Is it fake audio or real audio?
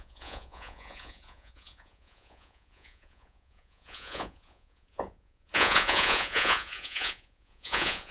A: fake